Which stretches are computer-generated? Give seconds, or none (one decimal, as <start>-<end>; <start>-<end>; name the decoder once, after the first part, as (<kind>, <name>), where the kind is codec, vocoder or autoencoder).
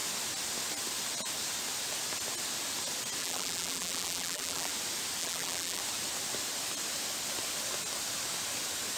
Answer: 3.2-4.7 (vocoder, BigVGAN v2); 5.2-5.8